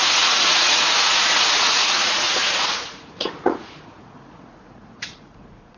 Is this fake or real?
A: fake